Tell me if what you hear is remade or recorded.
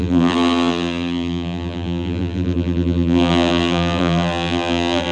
remade